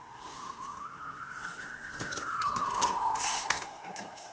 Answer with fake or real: fake